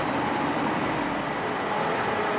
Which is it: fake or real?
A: real